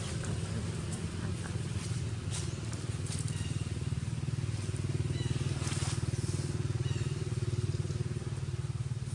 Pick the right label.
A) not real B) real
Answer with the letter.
B